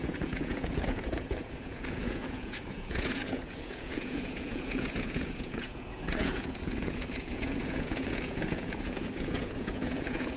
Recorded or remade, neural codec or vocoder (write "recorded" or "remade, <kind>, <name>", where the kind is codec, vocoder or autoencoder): remade, vocoder, Vocos